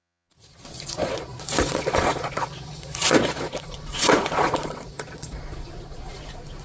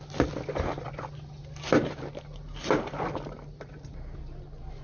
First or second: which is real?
second